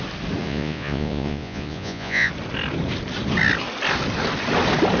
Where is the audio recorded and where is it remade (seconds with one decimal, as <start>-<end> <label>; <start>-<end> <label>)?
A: 0.0-0.4 recorded; 0.4-2.3 remade; 2.3-5.0 recorded